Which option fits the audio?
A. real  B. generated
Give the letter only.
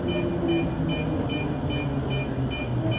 A